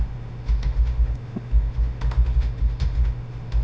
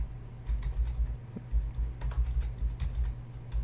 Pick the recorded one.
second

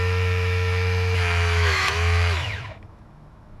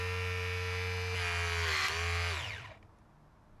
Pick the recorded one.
second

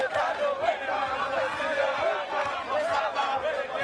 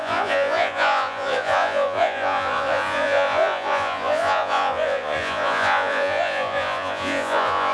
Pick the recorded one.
first